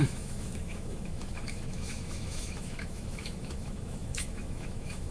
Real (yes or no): no